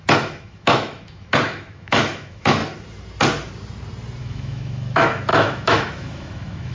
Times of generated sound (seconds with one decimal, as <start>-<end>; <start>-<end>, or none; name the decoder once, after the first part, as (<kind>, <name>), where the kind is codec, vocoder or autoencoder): 0.0-2.6 (autoencoder, DAC-VAE); 4.2-6.7